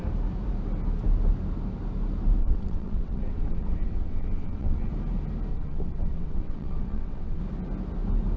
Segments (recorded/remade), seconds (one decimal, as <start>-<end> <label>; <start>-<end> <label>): 0.0-2.4 recorded; 2.4-4.9 remade; 4.9-5.5 recorded; 5.5-7.4 remade; 7.4-8.4 recorded